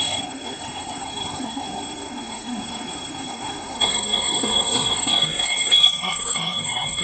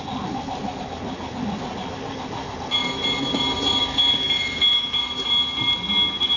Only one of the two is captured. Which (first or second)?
second